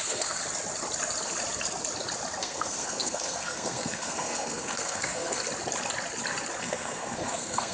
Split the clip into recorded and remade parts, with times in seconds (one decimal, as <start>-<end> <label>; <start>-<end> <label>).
0.0-0.4 remade; 0.4-2.4 recorded; 2.4-5.4 remade; 5.4-6.6 recorded; 6.6-7.7 remade